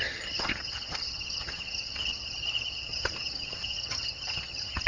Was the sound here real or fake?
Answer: fake